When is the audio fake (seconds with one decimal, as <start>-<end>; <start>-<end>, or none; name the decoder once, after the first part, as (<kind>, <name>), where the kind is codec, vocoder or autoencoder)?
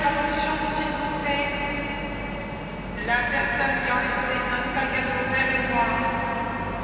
none